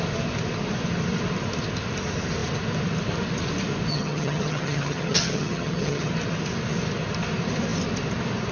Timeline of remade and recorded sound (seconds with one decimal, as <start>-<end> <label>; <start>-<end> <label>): 0.0-3.9 recorded; 3.9-6.1 remade; 6.1-8.5 recorded